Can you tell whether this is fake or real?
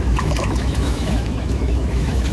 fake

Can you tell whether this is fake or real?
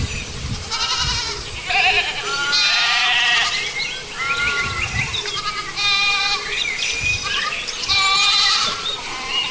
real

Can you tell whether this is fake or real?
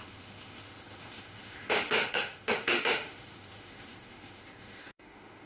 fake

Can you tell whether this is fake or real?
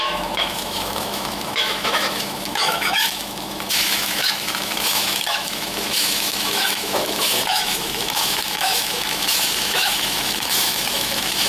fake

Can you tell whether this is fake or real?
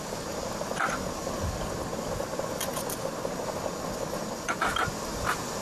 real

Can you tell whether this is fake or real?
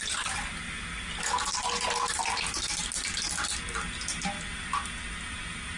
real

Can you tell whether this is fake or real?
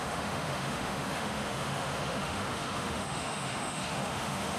fake